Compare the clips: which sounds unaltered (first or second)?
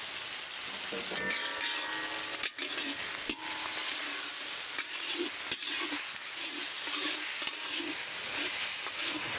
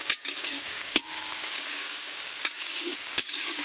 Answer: first